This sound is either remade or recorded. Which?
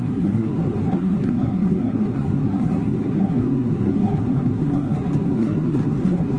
remade